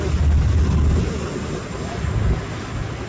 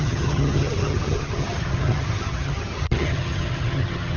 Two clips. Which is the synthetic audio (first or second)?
second